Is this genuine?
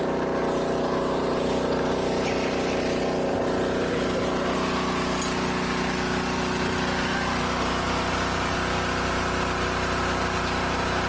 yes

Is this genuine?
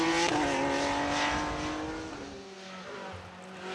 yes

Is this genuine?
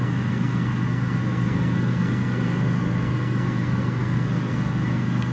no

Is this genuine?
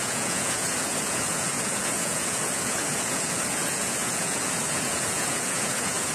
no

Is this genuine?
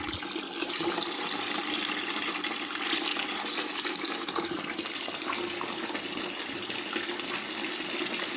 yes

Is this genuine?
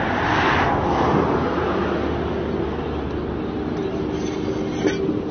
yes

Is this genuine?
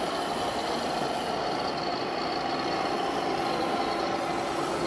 yes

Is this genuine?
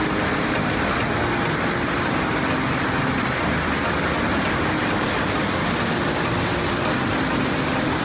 yes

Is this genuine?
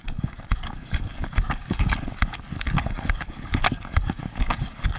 no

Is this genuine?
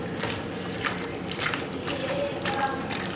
no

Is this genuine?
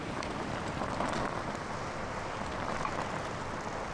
yes